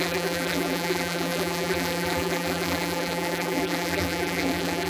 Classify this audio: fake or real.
fake